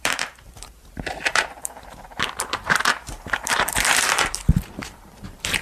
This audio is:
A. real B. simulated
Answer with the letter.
B